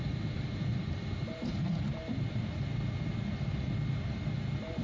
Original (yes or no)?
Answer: no